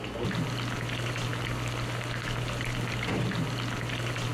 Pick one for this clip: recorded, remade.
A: recorded